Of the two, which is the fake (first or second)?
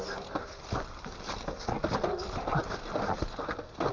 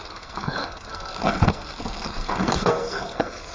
second